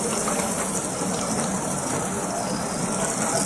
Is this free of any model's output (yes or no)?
yes